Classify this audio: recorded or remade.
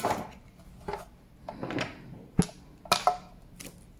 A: recorded